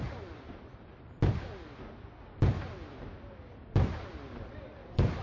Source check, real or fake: real